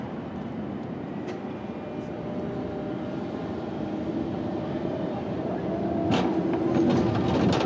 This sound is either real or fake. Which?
real